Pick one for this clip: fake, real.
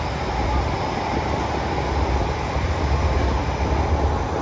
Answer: real